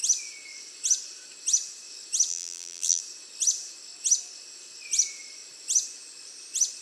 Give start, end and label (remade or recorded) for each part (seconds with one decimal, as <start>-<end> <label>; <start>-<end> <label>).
0.0-2.3 recorded; 2.3-3.0 remade; 3.0-6.8 recorded